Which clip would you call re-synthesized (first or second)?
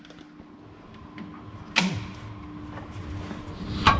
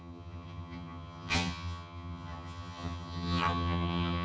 second